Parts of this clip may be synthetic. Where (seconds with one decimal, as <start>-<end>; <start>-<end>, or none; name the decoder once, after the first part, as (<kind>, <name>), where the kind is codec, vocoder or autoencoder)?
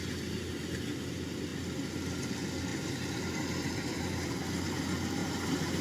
2.7-4.3 (vocoder, BigVGAN v2); 5.2-5.8